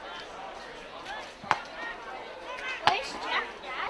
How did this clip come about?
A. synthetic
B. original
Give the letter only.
B